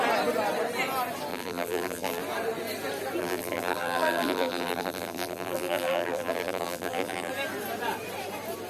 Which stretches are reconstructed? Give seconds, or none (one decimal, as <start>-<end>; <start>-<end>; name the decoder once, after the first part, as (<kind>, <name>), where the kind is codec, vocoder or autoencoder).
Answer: 1.3-2.2 (vocoder, BigVGAN v2); 3.2-7.3